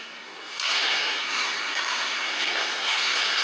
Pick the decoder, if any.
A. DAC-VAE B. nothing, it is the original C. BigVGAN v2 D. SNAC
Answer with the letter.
D